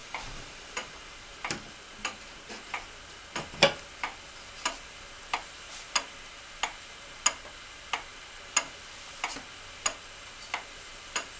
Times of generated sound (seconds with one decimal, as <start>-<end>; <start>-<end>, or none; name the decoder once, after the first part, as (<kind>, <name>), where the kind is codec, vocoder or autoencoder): 0.0-1.7 (vocoder, BigVGAN v2)